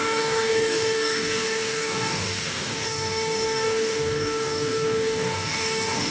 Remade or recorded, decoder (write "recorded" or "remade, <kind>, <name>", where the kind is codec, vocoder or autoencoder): remade, codec, DAC